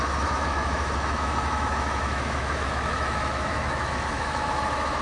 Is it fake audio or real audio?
fake